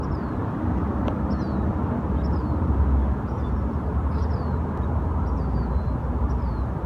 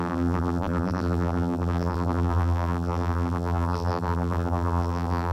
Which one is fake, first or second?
second